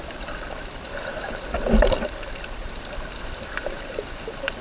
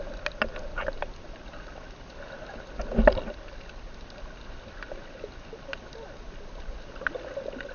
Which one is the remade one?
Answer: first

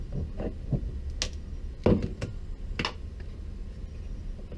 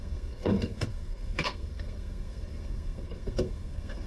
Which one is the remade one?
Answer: second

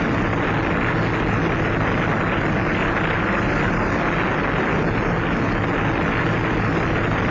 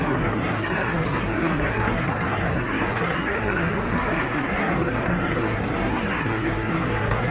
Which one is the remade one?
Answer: second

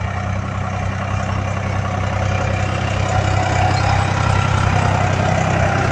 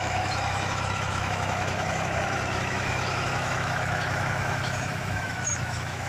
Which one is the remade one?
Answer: second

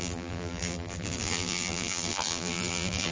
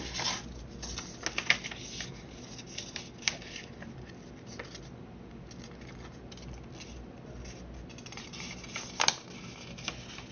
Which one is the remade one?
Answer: first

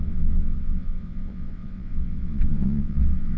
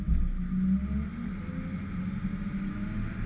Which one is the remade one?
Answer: first